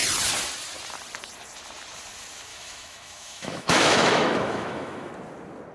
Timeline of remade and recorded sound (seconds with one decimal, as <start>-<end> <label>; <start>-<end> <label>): 0.0-2.5 recorded; 2.5-5.1 remade; 5.1-5.7 recorded